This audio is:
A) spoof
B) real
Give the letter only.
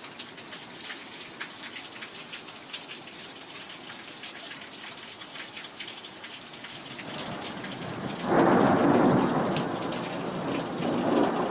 B